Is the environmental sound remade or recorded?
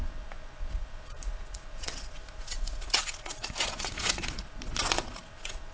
remade